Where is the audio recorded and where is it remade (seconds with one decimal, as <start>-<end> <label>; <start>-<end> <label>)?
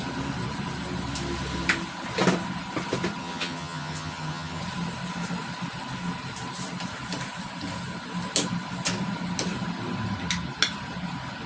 0.0-3.2 recorded; 3.2-4.6 remade; 4.6-11.5 recorded